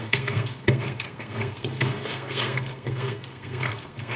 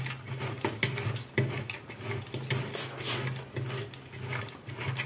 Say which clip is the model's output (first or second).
first